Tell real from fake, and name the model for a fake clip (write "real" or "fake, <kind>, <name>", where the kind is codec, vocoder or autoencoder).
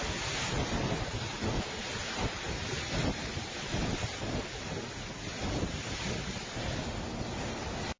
real